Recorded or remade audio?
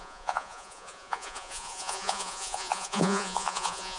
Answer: remade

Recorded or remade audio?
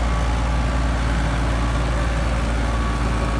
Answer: recorded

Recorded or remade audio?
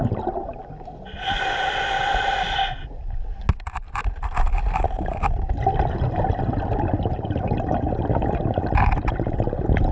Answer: recorded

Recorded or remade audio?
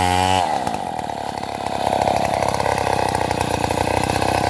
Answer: recorded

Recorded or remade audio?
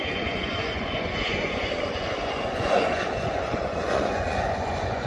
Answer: remade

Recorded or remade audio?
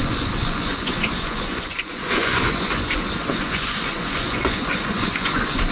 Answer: remade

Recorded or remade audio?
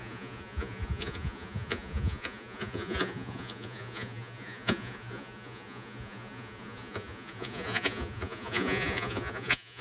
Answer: remade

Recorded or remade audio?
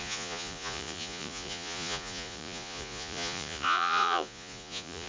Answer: remade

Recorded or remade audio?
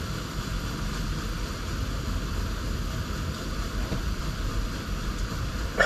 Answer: recorded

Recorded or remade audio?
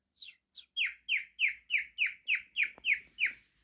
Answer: recorded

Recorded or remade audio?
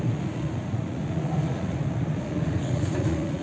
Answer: remade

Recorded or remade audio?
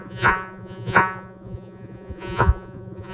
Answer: remade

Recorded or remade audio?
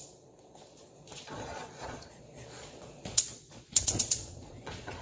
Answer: remade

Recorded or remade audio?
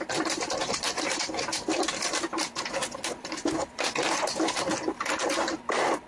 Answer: recorded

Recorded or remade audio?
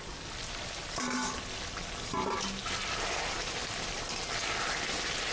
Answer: recorded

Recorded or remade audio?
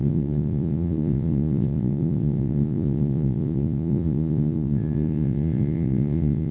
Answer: remade